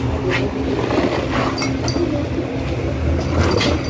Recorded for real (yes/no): yes